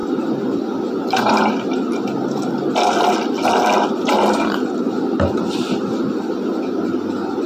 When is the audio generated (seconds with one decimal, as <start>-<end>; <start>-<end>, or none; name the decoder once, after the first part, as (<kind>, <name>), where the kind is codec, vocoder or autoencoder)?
none